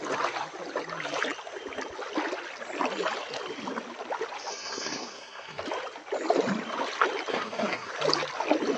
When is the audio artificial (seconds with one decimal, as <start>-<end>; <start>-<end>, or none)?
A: 4.5-5.6; 7.3-7.9